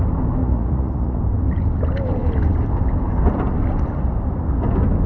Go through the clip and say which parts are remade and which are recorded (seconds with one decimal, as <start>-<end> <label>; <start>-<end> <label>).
0.0-0.4 recorded; 0.4-1.2 remade; 1.2-5.1 recorded